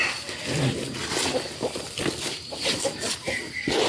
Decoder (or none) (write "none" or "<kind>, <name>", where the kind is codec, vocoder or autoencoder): none